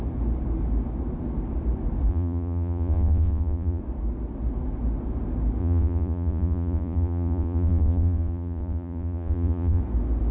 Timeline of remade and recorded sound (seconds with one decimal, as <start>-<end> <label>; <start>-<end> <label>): 0.0-2.1 recorded; 2.1-3.8 remade; 3.8-5.6 recorded; 5.6-9.8 remade; 9.8-10.3 recorded